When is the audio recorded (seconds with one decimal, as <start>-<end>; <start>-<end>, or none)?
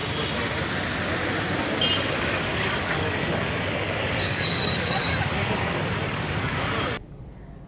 0.0-2.5; 7.1-7.7